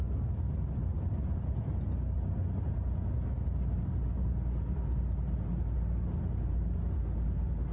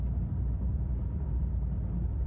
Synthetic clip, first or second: second